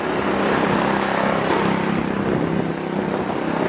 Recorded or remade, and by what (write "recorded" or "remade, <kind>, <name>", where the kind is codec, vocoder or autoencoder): recorded